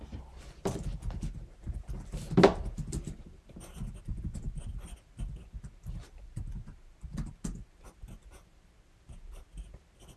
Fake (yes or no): no